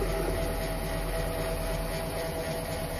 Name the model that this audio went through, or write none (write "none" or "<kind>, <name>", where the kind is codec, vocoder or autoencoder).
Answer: none